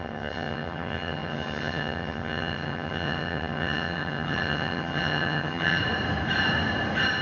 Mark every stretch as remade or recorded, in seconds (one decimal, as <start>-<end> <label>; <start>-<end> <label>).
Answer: 0.0-5.8 remade; 5.8-7.2 recorded